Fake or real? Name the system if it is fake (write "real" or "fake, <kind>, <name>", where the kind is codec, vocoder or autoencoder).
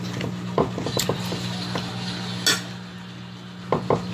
real